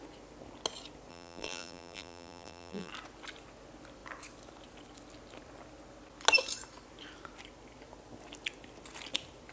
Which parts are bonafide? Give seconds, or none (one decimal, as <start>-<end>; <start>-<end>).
0.0-1.1; 2.9-9.5